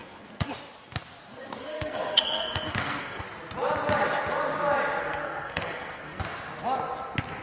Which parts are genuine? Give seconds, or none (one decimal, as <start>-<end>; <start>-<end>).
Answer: 0.5-1.3; 3.2-5.0; 6.2-7.4